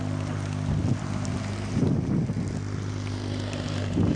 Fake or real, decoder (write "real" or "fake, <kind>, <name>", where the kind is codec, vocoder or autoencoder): real